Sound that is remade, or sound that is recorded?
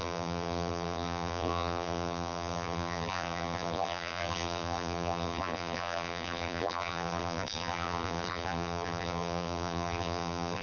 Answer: remade